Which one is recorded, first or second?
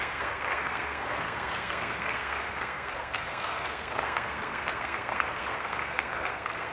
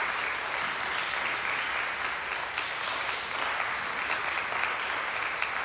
second